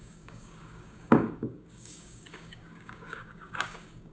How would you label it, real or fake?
fake